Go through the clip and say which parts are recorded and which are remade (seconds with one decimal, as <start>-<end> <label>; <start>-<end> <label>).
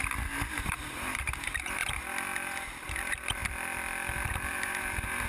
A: 0.0-0.6 recorded; 0.6-1.8 remade; 1.8-2.8 recorded; 2.8-3.4 remade; 3.4-4.5 recorded; 4.5-5.3 remade